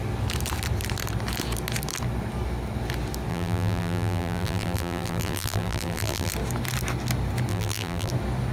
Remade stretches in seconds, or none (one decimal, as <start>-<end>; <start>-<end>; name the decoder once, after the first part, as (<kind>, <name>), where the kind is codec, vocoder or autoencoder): 3.3-6.3 (vocoder, BigVGAN v2); 7.5-8.1